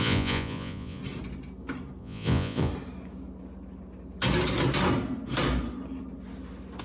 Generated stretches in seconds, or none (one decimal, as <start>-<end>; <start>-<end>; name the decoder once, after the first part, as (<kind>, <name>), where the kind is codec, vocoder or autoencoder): 0.0-1.0 (vocoder, Vocos); 2.0-2.7